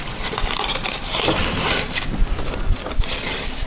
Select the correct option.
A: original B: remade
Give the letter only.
B